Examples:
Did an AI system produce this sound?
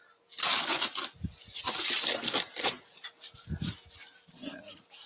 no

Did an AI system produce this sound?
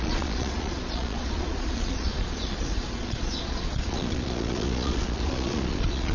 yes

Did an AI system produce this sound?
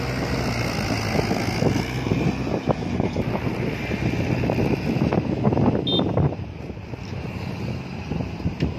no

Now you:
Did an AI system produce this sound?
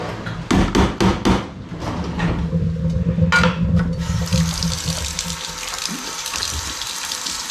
no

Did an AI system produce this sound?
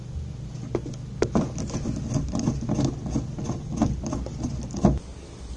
no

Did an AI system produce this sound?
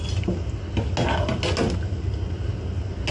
no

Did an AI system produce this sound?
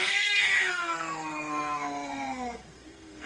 yes